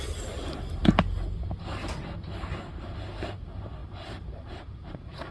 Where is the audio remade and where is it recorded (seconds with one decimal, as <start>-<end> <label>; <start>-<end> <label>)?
0.0-3.8 recorded; 3.8-5.3 remade